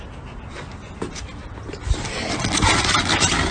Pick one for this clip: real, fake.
real